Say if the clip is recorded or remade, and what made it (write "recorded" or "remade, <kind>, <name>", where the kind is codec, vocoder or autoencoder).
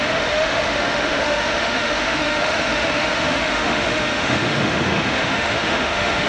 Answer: remade, autoencoder, DAC-VAE